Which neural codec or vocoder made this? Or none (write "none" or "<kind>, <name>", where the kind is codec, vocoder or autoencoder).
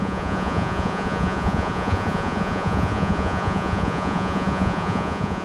vocoder, Vocos